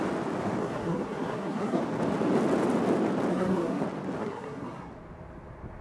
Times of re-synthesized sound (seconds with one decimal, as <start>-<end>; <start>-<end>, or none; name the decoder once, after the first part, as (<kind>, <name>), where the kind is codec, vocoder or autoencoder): 0.6-1.8 (codec, SNAC); 3.3-3.8; 4.2-4.9